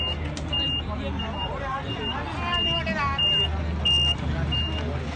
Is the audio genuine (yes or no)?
yes